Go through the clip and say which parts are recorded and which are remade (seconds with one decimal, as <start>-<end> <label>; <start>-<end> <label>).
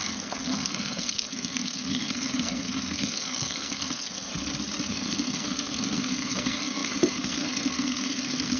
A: 0.0-4.3 remade; 4.3-4.9 recorded; 4.9-8.6 remade